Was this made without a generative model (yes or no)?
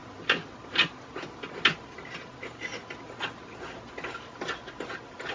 yes